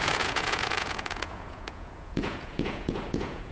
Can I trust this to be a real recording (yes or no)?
no